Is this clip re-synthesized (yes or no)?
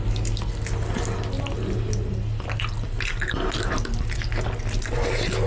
no